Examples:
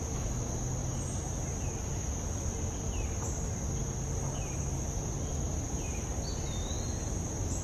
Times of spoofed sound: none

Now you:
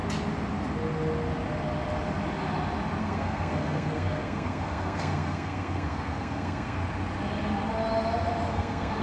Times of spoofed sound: 3.0-6.8 (codec, SNAC); 8.5-9.0

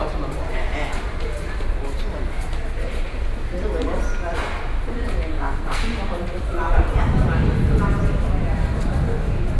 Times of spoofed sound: 5.3-5.8 (codec, SNAC)

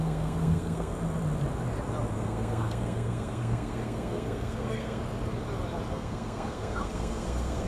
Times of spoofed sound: 0.0-0.9 (codec, SNAC); 2.1-5.0; 5.9-7.7

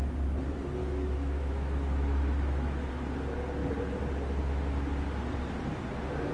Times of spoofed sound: 0.8-2.9 (autoencoder, DAC-VAE)

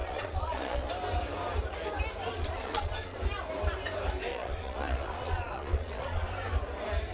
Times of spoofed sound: 0.0-0.9 (vocoder, Vocos); 2.3-3.2; 4.3-6.3

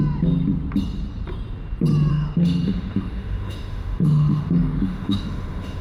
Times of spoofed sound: 2.1-5.8 (autoencoder, DAC-VAE)